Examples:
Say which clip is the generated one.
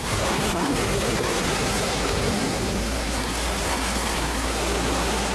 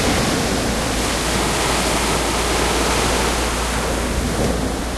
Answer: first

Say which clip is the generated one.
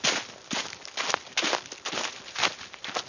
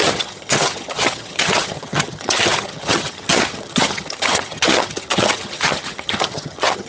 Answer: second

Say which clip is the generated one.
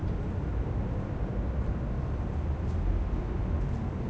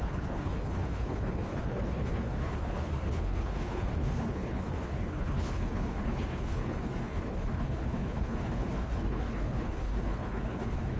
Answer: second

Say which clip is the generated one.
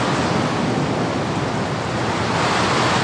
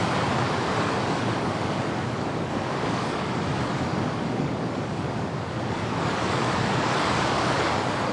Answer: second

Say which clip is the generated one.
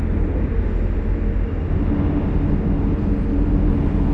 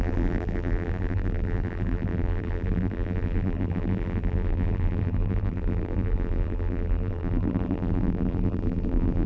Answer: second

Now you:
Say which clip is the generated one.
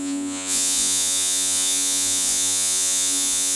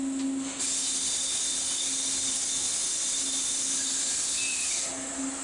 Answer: first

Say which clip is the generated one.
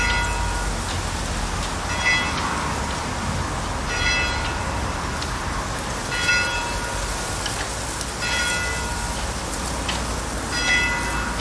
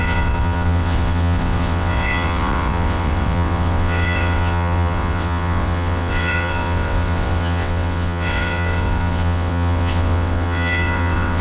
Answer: second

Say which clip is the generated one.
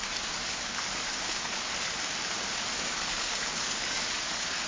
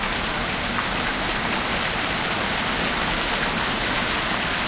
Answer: first